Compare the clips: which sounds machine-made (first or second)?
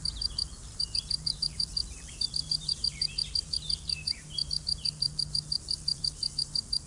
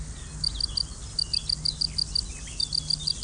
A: first